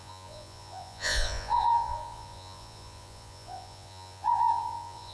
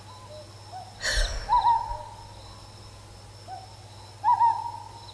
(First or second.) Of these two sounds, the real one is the second